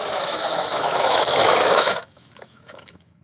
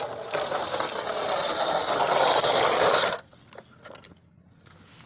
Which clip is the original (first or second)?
second